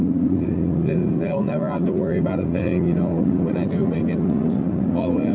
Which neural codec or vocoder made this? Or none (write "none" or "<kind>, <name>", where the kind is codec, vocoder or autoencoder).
vocoder, Vocos